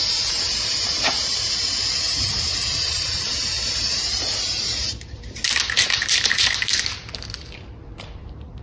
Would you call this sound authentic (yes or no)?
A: no